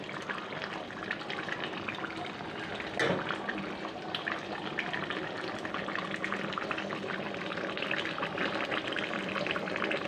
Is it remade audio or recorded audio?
recorded